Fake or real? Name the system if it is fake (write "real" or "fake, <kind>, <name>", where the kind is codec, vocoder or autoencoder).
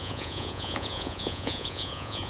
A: fake, vocoder, Vocos